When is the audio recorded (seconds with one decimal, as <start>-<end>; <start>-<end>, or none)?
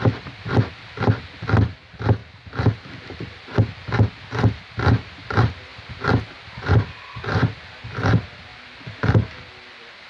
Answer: 0.0-10.1